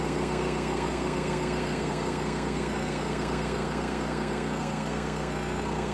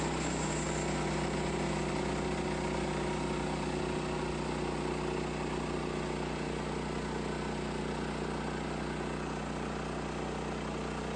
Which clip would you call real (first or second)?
second